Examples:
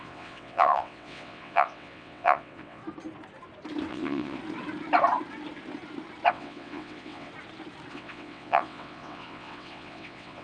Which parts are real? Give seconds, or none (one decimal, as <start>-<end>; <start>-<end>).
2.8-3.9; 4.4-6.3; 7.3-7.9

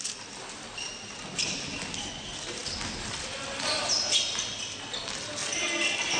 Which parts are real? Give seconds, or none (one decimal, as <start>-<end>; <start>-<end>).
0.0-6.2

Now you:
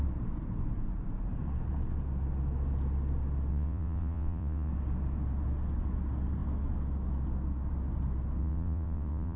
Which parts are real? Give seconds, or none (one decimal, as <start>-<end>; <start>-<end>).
0.0-3.5; 4.7-8.4